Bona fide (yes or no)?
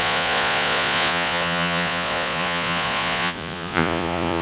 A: no